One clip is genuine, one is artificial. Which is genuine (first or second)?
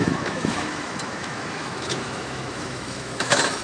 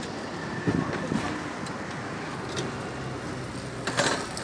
second